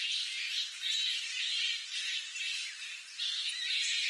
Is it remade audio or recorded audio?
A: recorded